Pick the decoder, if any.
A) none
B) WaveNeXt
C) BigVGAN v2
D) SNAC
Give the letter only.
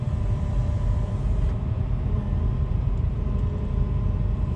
C